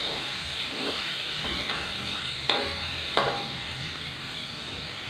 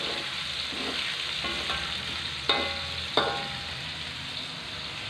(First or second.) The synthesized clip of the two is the first